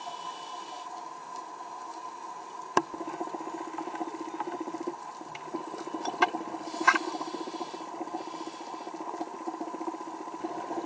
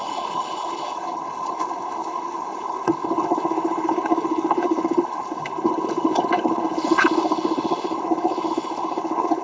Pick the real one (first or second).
first